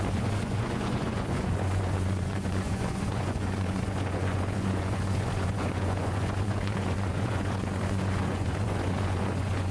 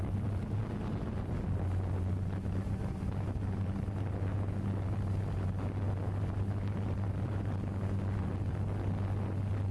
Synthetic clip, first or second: first